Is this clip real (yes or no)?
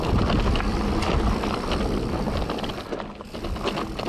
yes